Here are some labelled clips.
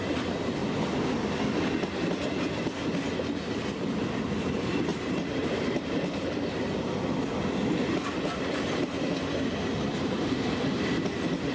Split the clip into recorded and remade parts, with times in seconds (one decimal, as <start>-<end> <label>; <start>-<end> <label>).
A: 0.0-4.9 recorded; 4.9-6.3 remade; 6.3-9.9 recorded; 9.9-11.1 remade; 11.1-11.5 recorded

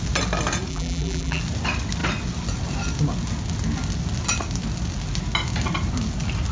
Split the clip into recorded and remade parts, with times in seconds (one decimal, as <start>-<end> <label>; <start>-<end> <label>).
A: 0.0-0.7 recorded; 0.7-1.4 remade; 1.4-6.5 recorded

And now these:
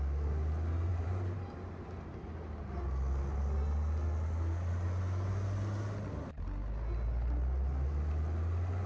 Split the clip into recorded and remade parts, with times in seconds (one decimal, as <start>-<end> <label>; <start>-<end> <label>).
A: 0.0-0.9 recorded; 0.9-1.5 remade; 1.5-8.9 recorded

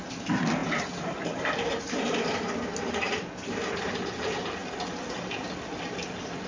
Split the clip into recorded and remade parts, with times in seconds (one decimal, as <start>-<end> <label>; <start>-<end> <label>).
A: 0.0-0.6 recorded; 0.6-3.9 remade; 3.9-6.5 recorded

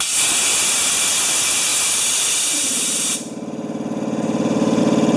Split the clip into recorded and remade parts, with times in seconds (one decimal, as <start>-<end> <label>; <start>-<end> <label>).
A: 0.0-1.7 recorded; 1.7-4.8 remade; 4.8-5.2 recorded

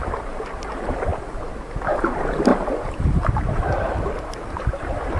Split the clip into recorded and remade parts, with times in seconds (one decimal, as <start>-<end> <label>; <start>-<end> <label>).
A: 0.0-0.7 remade; 0.7-2.5 recorded; 2.5-5.2 remade